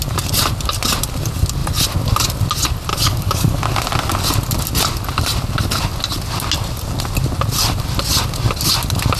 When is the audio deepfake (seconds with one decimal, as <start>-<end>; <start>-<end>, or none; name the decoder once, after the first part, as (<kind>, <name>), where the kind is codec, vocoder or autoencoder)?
2.9-3.6 (codec, DAC)